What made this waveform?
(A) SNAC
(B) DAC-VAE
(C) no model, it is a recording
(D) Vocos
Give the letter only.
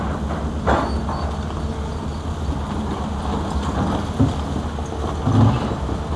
C